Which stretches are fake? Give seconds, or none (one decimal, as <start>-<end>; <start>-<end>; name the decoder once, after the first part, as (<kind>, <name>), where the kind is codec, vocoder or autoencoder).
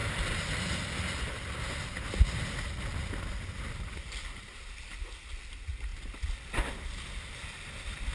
none